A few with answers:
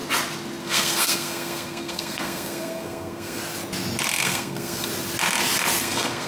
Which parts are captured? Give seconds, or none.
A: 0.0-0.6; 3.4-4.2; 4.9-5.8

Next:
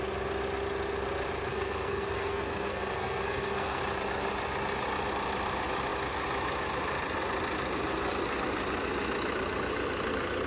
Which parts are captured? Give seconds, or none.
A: 0.0-1.5; 3.8-10.5

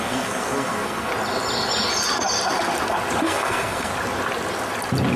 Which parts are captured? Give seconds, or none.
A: 1.1-3.2; 3.9-5.2

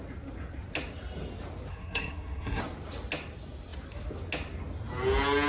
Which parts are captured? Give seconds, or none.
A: 0.0-1.7; 2.6-5.5

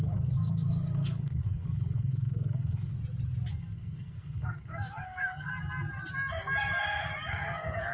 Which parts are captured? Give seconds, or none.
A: 2.9-3.5; 5.5-7.3